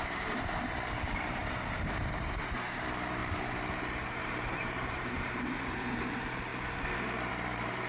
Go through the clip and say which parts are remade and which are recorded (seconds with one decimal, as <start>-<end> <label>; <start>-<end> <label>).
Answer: 0.0-3.2 remade; 3.2-4.1 recorded; 4.1-6.5 remade; 6.5-7.3 recorded; 7.3-7.9 remade